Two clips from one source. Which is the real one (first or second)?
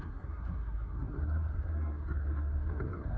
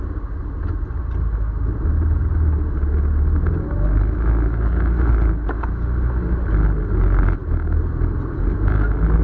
second